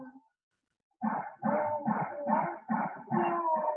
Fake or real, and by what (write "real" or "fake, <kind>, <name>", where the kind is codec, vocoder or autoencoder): real